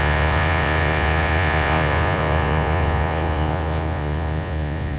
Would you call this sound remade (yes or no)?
yes